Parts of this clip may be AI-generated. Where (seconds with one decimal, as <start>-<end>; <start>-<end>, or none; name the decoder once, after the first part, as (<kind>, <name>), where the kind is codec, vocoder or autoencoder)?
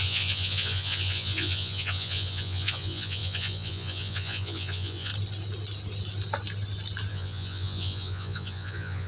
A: 0.0-5.1 (vocoder, Vocos); 7.1-9.1